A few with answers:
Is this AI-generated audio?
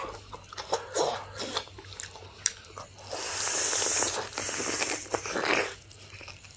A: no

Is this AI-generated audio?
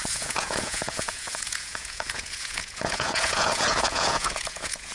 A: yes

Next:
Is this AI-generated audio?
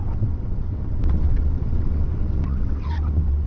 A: yes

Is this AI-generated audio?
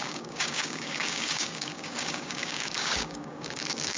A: yes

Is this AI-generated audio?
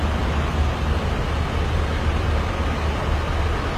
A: no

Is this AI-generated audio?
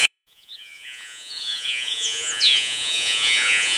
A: yes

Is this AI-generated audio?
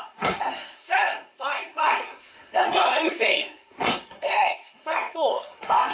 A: yes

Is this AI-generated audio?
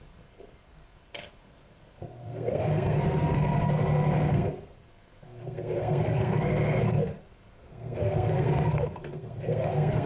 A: yes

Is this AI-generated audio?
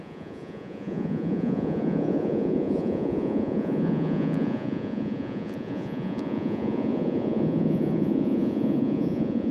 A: yes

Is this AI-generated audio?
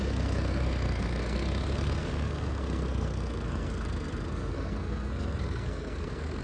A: yes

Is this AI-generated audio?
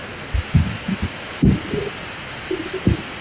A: no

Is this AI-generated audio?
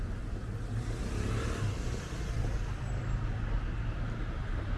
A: no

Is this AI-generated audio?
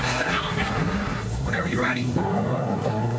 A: yes